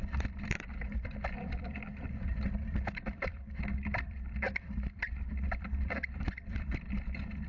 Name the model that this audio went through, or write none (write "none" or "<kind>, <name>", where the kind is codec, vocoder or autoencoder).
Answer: vocoder, BigVGAN v2